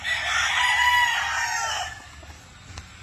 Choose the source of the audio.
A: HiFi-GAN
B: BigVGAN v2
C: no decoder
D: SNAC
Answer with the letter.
C